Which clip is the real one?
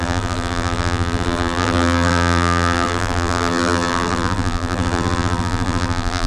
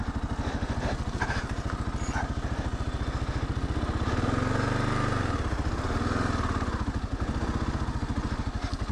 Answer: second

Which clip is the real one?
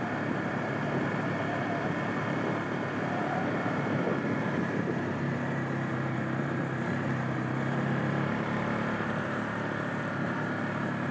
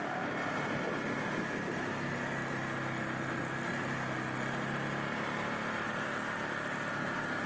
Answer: second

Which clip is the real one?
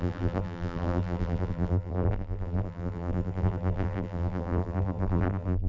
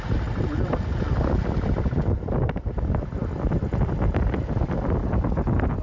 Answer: second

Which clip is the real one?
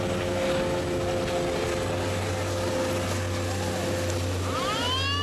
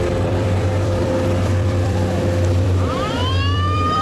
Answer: first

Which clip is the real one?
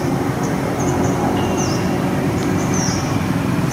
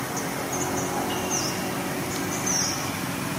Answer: second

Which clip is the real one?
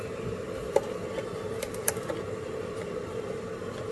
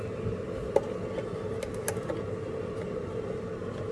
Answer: second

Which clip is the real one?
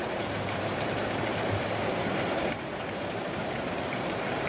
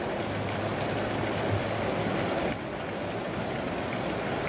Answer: second